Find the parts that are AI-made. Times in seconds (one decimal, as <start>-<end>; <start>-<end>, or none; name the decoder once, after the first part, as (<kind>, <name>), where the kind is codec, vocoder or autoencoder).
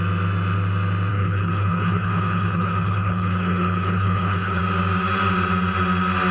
1.1-4.6 (codec, HILCodec)